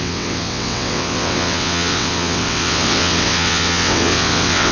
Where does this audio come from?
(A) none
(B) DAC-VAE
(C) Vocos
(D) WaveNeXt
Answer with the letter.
D